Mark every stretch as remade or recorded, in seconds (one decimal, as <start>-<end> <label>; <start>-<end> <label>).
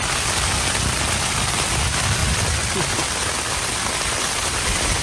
0.0-5.0 recorded